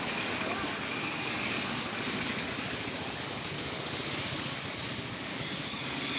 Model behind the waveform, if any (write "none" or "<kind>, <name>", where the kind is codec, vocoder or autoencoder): codec, DAC